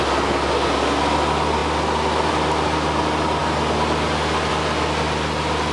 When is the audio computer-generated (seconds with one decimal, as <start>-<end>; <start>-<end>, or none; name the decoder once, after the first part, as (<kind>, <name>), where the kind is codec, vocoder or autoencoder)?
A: none